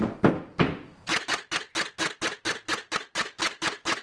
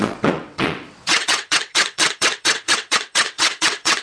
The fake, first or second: second